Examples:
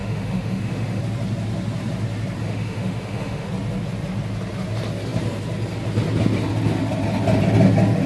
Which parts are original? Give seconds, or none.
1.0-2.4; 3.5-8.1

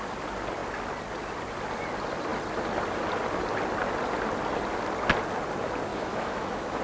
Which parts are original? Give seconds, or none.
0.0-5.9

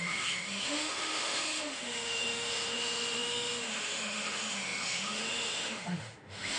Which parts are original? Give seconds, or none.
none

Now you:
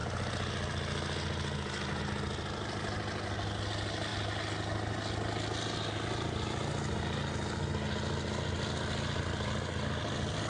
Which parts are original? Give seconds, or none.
0.0-10.5

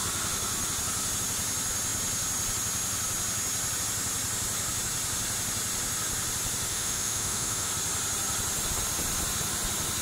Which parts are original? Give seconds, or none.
0.0-6.7; 7.7-10.0

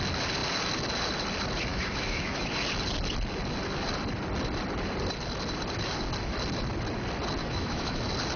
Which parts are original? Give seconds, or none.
0.0-1.7; 2.5-7.4; 8.0-8.4

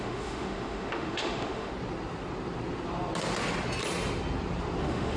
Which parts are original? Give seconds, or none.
1.7-4.8